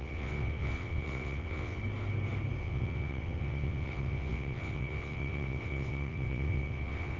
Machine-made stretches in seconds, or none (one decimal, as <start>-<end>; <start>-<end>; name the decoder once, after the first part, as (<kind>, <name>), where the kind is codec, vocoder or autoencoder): 0.0-1.8 (vocoder, WaveNeXt); 2.6-7.2